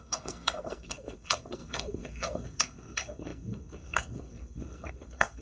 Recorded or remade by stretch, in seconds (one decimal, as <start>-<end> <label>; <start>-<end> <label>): 0.0-5.4 remade